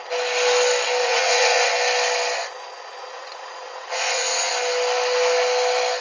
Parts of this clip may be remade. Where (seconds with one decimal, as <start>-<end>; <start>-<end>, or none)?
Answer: 1.0-1.7; 3.1-4.5